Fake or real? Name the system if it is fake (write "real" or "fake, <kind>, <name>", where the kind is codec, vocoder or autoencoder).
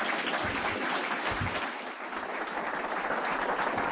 real